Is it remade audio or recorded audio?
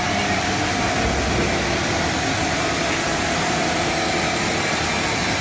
recorded